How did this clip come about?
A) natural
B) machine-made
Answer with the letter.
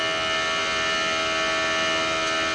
A